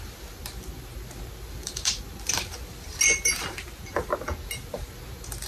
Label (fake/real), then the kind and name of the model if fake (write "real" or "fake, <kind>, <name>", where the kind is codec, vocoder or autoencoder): real